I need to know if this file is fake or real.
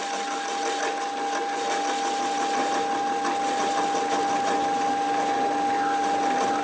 real